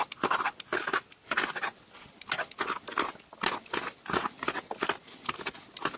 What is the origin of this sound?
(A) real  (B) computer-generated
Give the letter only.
A